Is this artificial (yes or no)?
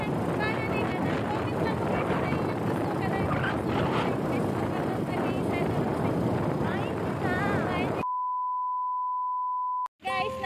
no